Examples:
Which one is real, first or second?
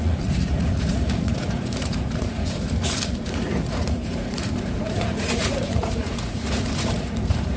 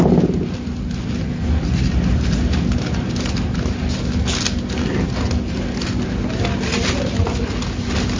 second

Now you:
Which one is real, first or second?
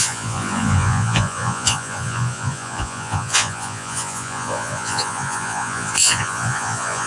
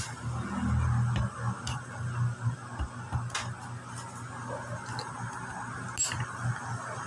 second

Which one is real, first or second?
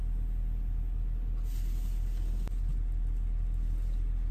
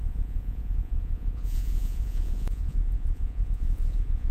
first